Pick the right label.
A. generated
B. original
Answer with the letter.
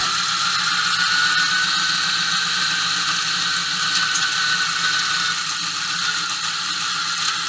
B